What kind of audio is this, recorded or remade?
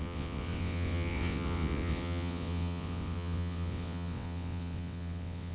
remade